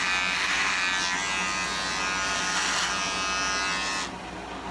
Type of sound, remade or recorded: recorded